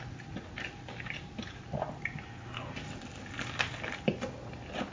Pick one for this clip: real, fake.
real